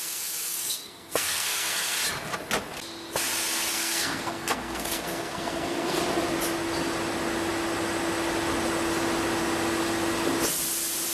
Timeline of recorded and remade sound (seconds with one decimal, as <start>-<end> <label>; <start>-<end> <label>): 0.0-2.0 remade; 2.0-3.7 recorded; 3.7-6.0 remade; 6.0-11.1 recorded